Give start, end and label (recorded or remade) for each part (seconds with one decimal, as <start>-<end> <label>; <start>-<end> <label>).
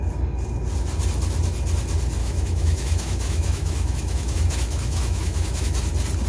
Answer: 0.0-2.2 recorded; 2.2-5.7 remade; 5.7-6.3 recorded